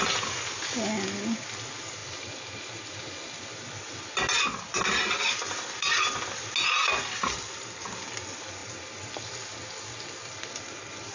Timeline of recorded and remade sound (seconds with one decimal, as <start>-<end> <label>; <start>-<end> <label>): 0.0-11.1 recorded